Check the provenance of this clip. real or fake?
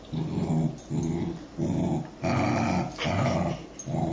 real